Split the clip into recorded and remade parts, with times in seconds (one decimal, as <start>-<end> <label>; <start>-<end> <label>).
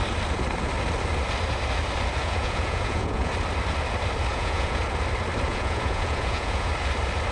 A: 0.0-2.2 recorded; 2.2-3.3 remade; 3.3-4.3 recorded; 4.3-4.8 remade; 4.8-5.5 recorded; 5.5-6.7 remade; 6.7-7.3 recorded